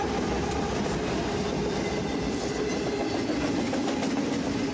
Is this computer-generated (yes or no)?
no